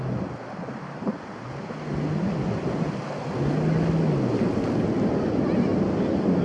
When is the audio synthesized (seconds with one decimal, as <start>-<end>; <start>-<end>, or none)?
none